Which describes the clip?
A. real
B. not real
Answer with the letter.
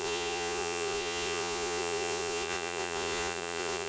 B